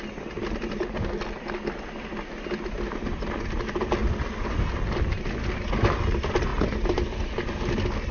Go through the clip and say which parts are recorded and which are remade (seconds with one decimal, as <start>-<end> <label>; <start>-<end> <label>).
0.0-8.1 recorded